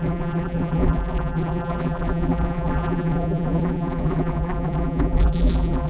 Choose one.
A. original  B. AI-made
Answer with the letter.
B